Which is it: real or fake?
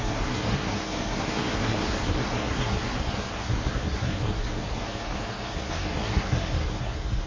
fake